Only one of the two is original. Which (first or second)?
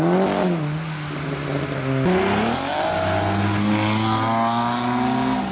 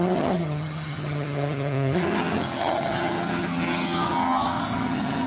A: first